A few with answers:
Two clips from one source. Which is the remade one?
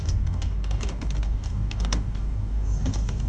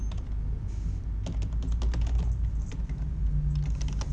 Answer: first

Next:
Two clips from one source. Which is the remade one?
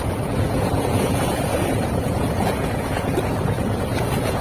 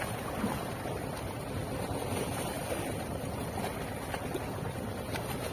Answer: first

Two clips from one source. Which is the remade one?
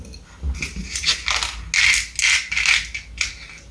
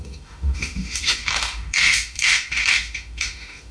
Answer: second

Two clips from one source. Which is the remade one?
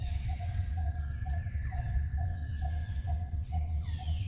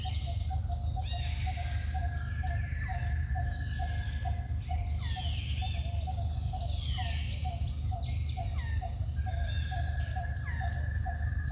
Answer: first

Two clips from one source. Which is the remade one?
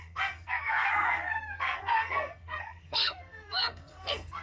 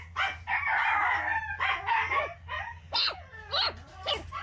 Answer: first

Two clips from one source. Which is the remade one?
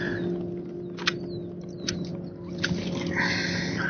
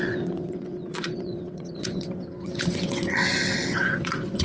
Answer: second